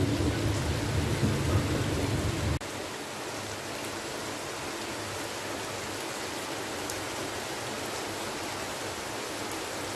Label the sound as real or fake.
real